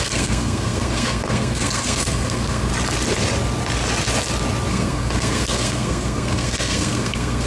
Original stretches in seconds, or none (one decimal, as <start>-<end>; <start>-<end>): 2.7-4.7